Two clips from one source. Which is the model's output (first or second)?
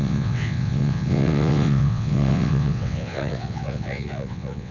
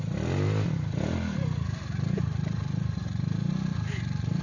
first